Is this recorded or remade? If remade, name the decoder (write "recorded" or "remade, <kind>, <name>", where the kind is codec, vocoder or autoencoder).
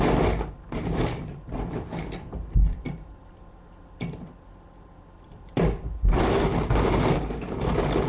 recorded